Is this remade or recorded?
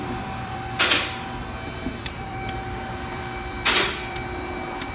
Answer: remade